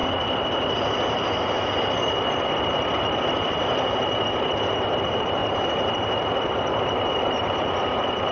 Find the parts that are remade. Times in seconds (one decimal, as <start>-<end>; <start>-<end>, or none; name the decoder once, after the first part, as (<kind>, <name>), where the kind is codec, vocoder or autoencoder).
5.0-5.4 (vocoder, BigVGAN v2); 6.8-8.3